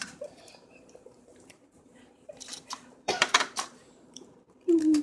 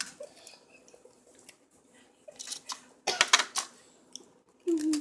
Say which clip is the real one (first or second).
second